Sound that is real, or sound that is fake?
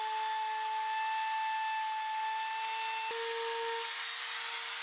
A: real